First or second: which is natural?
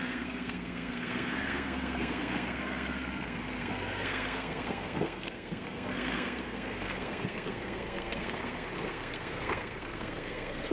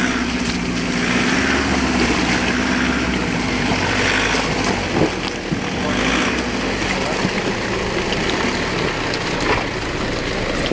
second